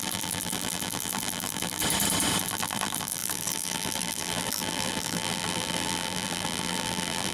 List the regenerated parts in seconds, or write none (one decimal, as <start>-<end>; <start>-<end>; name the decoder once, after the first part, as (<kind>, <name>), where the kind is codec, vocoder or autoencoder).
0.0-1.8 (vocoder, BigVGAN v2); 2.4-7.3